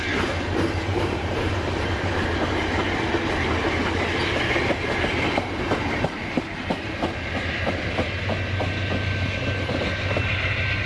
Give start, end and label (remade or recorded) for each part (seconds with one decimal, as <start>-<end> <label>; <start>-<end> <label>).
0.0-0.9 recorded; 0.9-1.5 remade; 1.5-10.9 recorded